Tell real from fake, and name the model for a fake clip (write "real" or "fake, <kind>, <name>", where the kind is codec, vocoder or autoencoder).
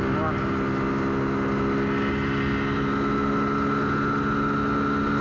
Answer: real